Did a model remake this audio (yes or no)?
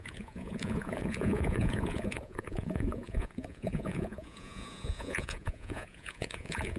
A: yes